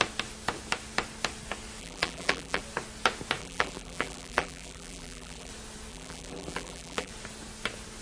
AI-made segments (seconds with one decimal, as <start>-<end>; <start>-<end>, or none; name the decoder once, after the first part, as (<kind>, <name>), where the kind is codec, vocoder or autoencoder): 1.8-2.6 (vocoder, BigVGAN v2); 3.4-5.5; 5.9-7.1